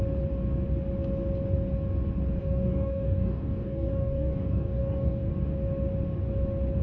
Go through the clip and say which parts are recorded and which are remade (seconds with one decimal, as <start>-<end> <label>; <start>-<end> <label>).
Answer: 0.0-2.4 recorded; 2.4-5.3 remade; 5.3-6.8 recorded